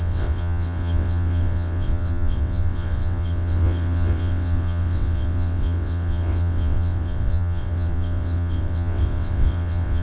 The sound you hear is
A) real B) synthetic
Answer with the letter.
B